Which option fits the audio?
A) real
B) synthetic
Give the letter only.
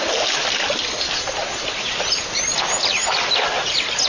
A